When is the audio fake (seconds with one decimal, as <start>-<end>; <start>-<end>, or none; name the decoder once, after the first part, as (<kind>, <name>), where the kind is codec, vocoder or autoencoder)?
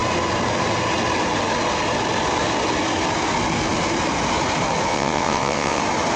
4.9-5.8 (vocoder, WaveNeXt)